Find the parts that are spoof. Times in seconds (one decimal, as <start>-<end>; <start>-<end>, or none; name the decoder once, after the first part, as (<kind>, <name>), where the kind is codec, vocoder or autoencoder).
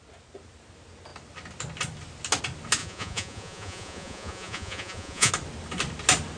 2.8-5.3 (vocoder, Vocos)